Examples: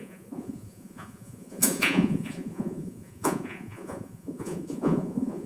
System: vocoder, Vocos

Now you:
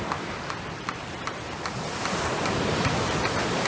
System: vocoder, BigVGAN v2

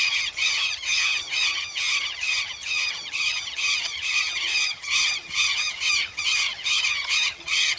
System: vocoder, HiFi-GAN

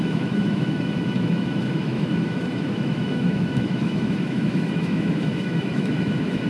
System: autoencoder, DAC-VAE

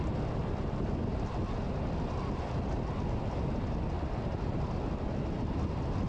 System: none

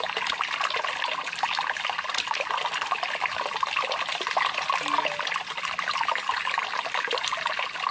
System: none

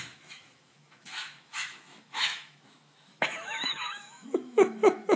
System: autoencoder, DAC-VAE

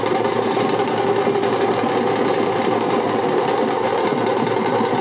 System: none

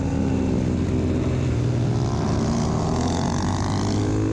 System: none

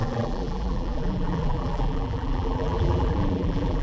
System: vocoder, BigVGAN v2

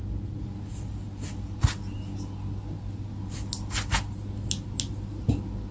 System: none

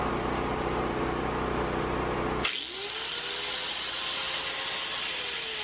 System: none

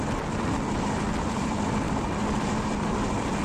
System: vocoder, BigVGAN v2